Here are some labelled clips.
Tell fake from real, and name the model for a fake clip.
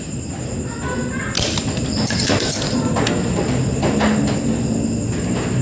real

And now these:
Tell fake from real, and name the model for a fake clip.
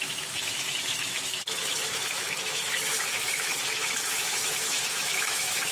fake, autoencoder, DAC-VAE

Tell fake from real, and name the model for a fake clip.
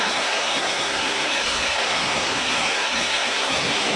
fake, codec, SNAC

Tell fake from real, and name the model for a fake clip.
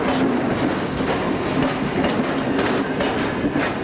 real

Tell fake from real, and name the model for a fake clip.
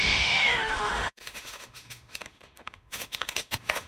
fake, autoencoder, DAC-VAE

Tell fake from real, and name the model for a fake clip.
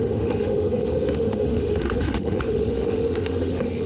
fake, autoencoder, DAC-VAE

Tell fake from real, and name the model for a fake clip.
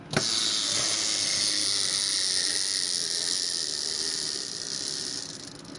real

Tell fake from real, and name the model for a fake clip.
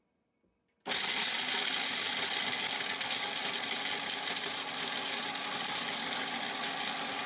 real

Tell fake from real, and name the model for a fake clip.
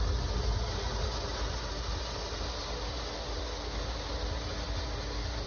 real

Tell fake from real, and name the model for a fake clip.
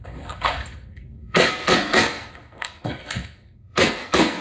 fake, codec, SNAC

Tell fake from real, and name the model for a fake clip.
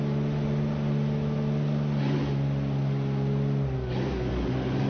real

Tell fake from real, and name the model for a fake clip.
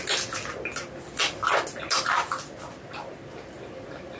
real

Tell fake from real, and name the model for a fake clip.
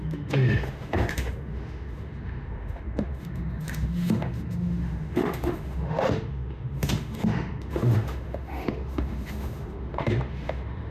fake, autoencoder, DAC-VAE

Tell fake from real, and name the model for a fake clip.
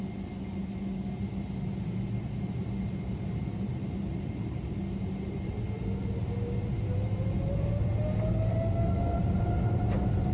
real